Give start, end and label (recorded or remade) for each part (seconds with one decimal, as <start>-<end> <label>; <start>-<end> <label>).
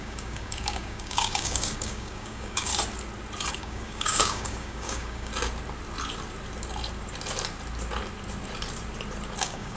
0.0-2.7 remade; 2.7-3.5 recorded; 3.5-5.3 remade; 5.3-9.4 recorded; 9.4-9.8 remade